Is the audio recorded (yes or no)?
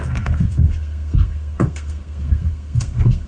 no